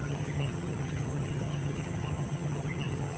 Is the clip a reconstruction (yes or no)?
yes